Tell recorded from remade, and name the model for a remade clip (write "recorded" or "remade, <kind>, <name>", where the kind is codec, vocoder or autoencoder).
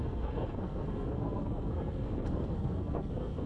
remade, codec, SNAC